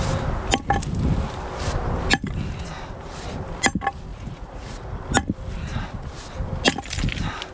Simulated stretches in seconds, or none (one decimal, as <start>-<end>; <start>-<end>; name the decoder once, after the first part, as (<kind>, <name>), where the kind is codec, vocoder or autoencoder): 4.1-5.0 (vocoder, Vocos)